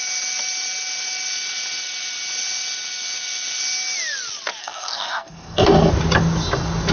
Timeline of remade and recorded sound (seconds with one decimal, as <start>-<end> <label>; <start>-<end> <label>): 0.0-4.6 recorded; 4.6-5.9 remade; 5.9-6.9 recorded